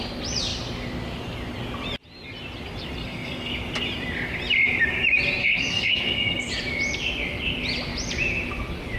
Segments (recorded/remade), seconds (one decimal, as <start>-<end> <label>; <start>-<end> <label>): 0.0-3.0 recorded; 3.0-3.5 remade; 3.5-5.4 recorded; 5.4-6.5 remade; 6.5-9.0 recorded